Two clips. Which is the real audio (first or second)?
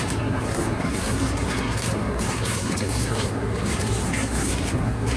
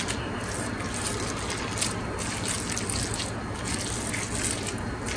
second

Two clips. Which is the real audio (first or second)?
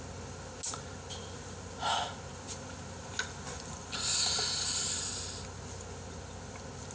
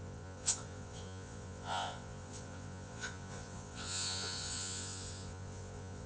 first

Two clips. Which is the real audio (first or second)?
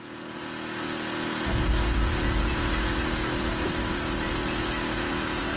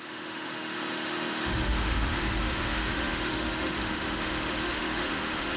first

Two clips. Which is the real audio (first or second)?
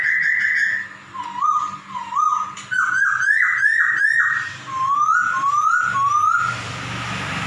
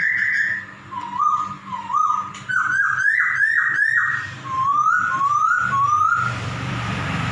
first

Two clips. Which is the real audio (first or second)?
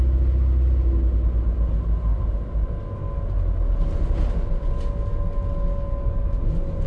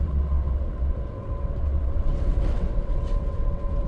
first